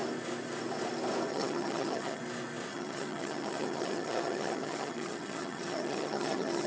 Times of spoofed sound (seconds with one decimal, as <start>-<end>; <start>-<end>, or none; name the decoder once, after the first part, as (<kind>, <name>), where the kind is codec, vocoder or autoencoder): 1.3-2.2 (vocoder, HiFi-GAN); 2.7-6.7